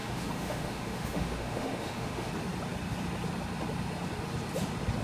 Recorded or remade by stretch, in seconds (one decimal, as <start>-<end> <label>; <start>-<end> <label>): 0.0-2.3 remade; 2.3-5.0 recorded